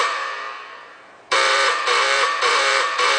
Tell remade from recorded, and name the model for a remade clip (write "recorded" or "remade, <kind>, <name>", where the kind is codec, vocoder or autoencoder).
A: remade, vocoder, BigVGAN v2